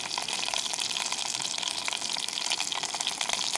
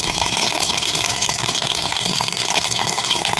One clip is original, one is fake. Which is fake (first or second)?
second